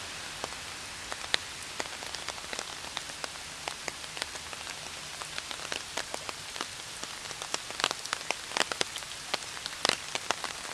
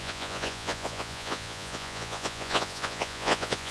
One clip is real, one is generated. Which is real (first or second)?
first